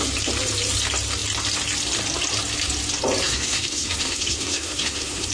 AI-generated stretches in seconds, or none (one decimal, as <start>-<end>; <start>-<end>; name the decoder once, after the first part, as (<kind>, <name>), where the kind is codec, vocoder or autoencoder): 3.2-5.3 (codec, SNAC)